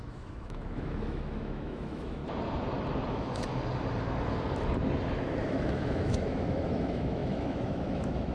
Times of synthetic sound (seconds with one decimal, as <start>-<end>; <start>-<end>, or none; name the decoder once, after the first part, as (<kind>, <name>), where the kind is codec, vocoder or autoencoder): 0.0-2.2 (autoencoder, DAC-VAE); 3.1-3.5; 5.4-8.3